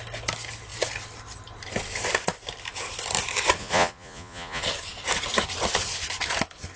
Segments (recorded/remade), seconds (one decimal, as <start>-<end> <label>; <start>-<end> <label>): 0.0-3.6 recorded; 3.6-4.6 remade; 4.6-6.8 recorded